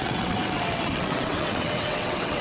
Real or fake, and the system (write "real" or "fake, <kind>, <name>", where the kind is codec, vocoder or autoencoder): fake, vocoder, WaveNeXt